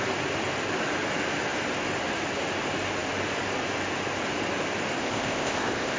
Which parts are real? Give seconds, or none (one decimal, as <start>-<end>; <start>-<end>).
0.0-5.0